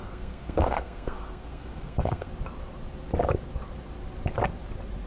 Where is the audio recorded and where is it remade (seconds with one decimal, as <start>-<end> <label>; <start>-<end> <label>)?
0.0-2.3 remade; 2.3-5.1 recorded